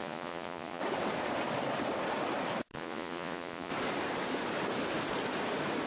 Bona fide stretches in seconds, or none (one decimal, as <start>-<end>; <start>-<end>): 0.8-2.7; 3.7-5.9